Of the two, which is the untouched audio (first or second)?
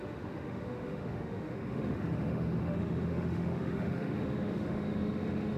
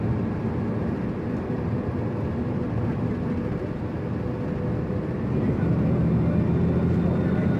second